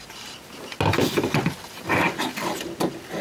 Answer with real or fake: real